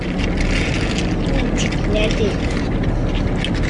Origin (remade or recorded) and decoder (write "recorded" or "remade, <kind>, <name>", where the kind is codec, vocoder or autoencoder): recorded